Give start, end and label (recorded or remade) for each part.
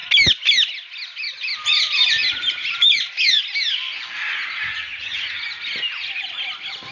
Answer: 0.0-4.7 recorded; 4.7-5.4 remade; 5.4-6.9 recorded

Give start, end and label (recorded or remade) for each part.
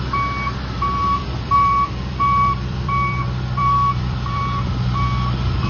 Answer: 0.0-1.0 recorded; 1.0-4.4 remade; 4.4-5.7 recorded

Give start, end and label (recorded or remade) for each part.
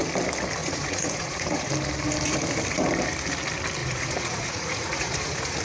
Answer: 0.0-0.6 recorded; 0.6-1.7 remade; 1.7-3.8 recorded; 3.8-5.6 remade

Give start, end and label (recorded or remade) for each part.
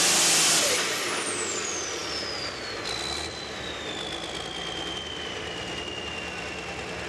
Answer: 0.0-7.1 recorded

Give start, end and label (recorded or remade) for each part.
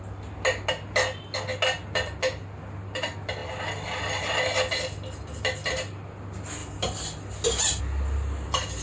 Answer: 0.0-8.8 recorded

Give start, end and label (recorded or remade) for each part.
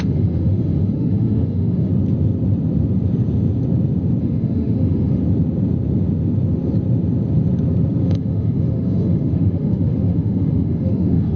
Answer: 0.0-1.9 remade; 1.9-4.2 recorded; 4.2-5.2 remade; 5.2-8.0 recorded; 8.0-11.4 remade